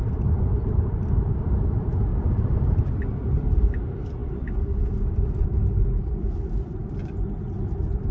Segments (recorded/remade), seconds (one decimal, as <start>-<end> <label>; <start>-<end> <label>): 0.0-2.1 recorded; 2.1-2.6 remade; 2.6-4.2 recorded; 4.2-7.2 remade; 7.2-8.1 recorded